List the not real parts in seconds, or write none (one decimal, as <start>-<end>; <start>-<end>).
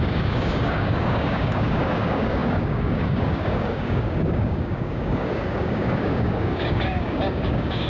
0.0-7.9